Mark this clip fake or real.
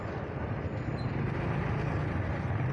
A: real